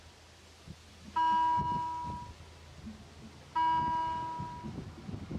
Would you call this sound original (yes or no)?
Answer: yes